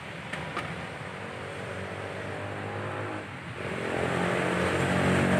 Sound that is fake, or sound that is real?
real